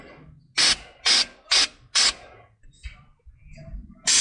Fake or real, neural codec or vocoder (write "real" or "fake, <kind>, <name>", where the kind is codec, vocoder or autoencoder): real